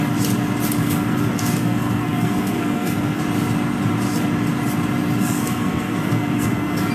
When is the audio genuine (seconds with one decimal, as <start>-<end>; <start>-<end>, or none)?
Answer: 0.0-0.8; 3.2-5.2